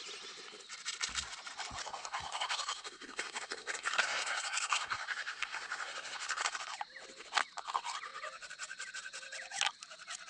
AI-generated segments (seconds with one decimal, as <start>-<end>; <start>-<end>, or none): 1.8-6.5